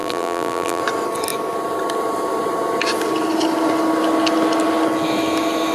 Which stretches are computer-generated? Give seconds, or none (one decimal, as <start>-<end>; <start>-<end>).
0.0-0.8